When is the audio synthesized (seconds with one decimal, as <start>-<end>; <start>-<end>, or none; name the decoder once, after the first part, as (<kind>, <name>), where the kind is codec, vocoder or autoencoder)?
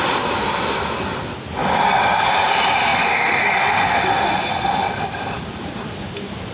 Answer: 1.6-2.2 (codec, DAC)